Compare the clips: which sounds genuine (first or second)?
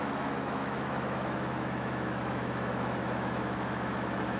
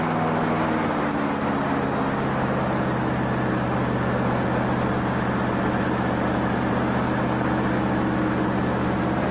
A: second